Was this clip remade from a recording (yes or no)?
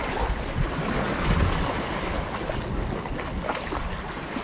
no